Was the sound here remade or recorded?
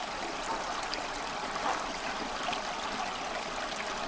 recorded